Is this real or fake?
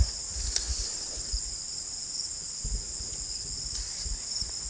fake